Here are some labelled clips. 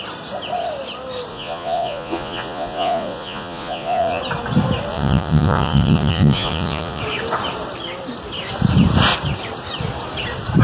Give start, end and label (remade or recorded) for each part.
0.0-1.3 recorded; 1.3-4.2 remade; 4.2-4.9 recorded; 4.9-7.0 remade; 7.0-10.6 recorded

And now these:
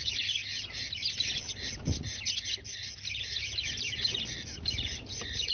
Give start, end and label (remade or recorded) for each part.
0.0-5.5 recorded

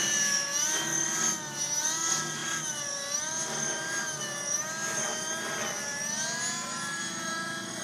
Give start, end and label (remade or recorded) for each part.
0.0-7.8 recorded

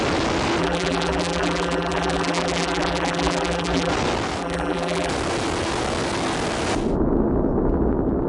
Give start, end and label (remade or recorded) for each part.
0.0-0.6 recorded; 0.6-3.9 remade; 3.9-4.4 recorded; 4.4-5.1 remade; 5.1-8.3 recorded